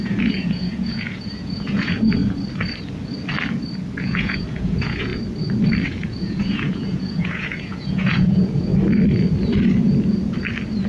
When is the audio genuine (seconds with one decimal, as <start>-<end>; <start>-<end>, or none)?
2.2-4.0; 5.1-5.9; 8.7-10.9